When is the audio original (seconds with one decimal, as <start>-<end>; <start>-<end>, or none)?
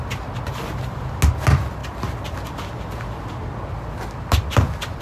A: 0.0-5.0